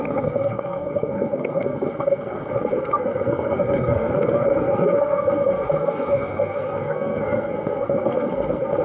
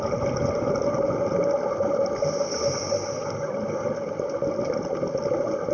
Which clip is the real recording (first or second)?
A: second